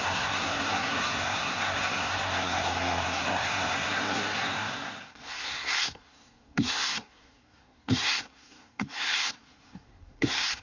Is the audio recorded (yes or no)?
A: no